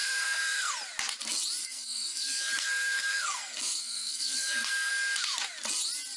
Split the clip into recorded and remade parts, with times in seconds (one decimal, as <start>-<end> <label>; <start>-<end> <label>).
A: 0.0-0.7 remade; 0.7-1.6 recorded; 1.6-4.9 remade; 4.9-6.2 recorded